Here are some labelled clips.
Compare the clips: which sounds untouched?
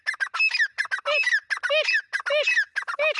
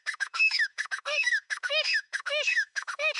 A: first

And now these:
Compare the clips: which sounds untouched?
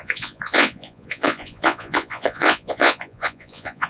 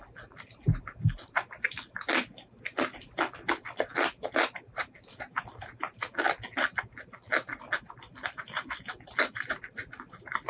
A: second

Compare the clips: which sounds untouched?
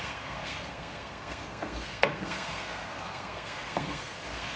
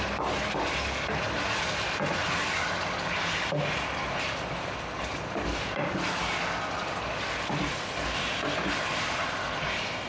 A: second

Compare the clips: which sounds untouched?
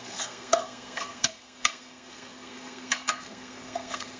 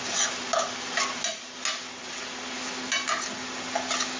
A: second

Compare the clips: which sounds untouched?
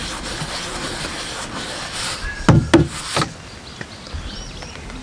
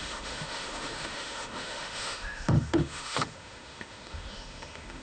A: first